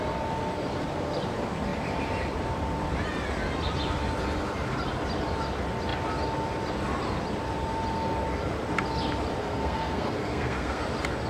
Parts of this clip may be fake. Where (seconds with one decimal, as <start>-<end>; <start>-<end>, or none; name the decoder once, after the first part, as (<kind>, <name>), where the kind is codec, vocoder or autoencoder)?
9.4-10.8 (codec, SNAC)